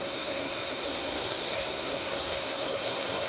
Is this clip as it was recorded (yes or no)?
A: no